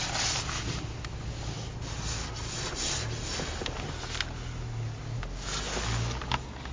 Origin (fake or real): real